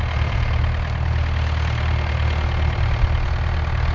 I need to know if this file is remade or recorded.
recorded